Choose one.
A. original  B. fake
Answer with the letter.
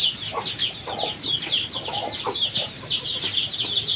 B